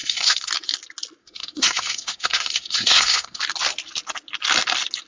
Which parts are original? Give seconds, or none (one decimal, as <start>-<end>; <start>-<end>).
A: 0.5-1.2; 3.4-5.1